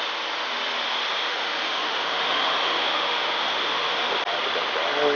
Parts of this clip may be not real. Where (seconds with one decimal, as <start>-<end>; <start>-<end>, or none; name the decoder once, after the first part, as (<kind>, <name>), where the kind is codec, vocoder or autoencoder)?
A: 1.2-4.1 (autoencoder, DAC-VAE)